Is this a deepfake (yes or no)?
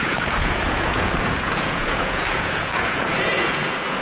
yes